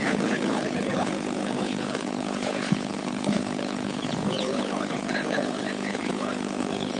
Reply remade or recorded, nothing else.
remade